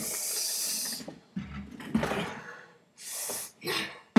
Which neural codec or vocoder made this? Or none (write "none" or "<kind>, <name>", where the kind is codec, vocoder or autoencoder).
none